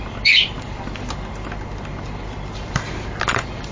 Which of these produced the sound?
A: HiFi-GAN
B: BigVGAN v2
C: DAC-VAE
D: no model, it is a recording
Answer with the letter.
D